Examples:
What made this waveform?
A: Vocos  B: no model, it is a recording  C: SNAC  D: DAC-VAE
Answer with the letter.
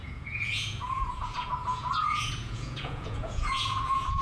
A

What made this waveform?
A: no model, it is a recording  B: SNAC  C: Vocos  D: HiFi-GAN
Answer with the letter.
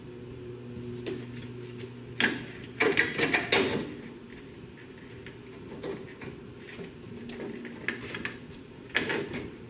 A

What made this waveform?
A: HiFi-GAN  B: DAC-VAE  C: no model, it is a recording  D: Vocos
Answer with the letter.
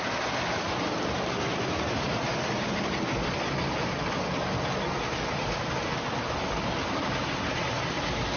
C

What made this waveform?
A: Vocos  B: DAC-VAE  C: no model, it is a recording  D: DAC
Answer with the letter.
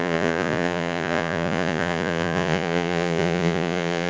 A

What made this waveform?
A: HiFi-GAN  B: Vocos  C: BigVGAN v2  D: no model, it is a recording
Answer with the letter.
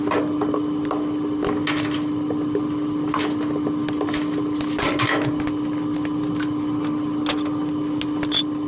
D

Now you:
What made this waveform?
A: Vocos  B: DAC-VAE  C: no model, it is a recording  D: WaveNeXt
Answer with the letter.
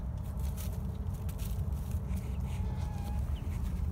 C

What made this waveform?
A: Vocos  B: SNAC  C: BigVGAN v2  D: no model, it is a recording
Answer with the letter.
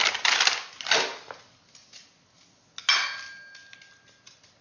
D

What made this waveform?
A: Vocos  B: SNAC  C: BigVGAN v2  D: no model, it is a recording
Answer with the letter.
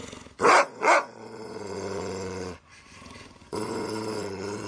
A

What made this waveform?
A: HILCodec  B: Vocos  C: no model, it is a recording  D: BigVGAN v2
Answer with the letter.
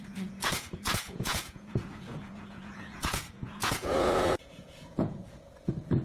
B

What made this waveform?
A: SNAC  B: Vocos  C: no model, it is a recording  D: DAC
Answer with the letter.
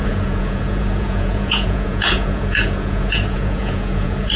B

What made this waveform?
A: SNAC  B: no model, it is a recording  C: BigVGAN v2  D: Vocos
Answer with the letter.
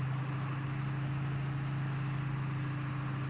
B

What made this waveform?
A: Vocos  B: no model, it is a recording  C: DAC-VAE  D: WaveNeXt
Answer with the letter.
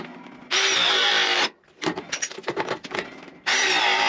B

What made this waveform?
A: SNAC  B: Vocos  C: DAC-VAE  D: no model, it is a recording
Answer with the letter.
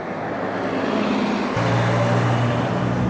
D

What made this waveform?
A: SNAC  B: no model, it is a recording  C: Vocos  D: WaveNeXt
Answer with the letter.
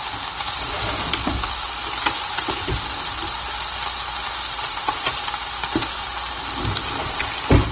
B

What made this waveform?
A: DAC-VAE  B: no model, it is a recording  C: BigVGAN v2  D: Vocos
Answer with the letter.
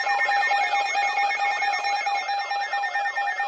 B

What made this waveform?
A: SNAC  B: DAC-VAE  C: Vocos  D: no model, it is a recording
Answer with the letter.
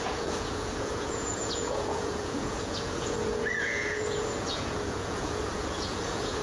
C